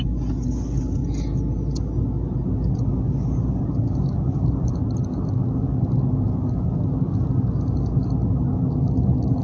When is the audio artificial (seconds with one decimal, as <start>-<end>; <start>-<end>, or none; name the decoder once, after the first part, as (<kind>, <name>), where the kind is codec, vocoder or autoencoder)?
none